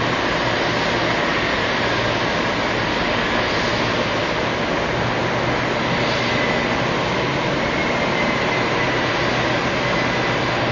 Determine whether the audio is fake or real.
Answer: real